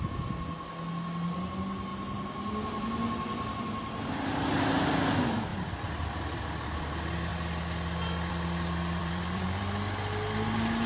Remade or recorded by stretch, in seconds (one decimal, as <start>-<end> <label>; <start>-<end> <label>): 0.0-5.5 recorded; 5.5-6.4 remade; 6.4-9.0 recorded; 9.0-9.6 remade; 9.6-10.9 recorded